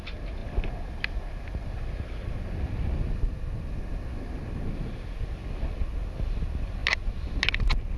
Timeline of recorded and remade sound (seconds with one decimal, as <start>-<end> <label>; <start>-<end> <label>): 0.0-8.0 recorded